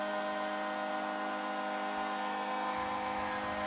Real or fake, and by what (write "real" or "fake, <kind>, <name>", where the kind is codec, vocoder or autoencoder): real